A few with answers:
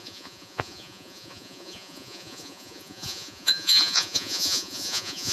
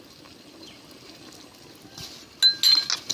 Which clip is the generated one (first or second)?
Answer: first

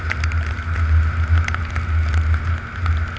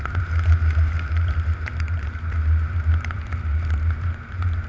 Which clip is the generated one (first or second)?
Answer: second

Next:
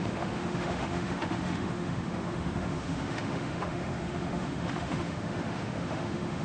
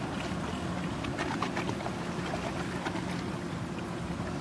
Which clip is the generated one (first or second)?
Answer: first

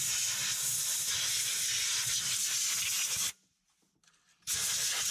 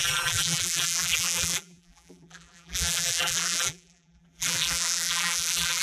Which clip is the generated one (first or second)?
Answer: second